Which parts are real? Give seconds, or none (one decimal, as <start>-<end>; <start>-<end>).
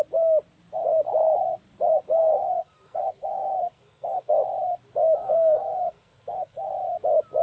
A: 0.0-2.2; 4.3-5.2; 6.7-7.4